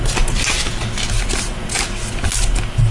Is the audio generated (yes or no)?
no